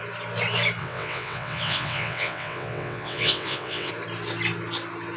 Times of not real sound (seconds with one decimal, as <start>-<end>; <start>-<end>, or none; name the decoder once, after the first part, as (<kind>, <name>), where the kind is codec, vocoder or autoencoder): 0.8-3.9 (vocoder, WaveNeXt)